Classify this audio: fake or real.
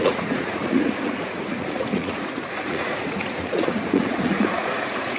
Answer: fake